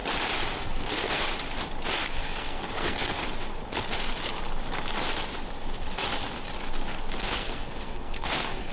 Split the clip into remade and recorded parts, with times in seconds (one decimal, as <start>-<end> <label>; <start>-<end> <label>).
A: 0.0-0.6 recorded; 0.6-1.2 remade; 1.2-2.1 recorded; 2.1-3.2 remade; 3.2-7.2 recorded; 7.2-8.7 remade

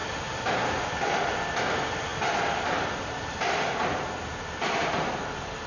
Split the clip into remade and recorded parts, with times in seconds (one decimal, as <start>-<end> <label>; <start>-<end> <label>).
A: 0.0-5.7 recorded